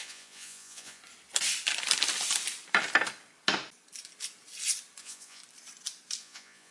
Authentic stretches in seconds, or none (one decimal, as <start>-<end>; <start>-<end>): 1.0-5.0; 5.4-6.2